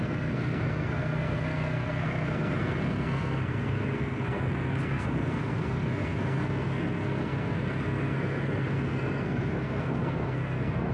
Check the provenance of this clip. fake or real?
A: fake